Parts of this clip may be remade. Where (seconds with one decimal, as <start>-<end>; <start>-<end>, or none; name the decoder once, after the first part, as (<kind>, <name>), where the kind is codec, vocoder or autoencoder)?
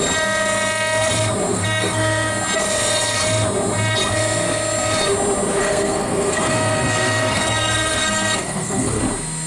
1.5-2.3 (codec, SNAC); 5.6-9.0